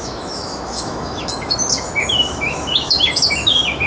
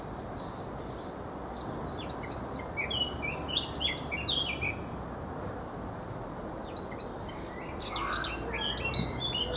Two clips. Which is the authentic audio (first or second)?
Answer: second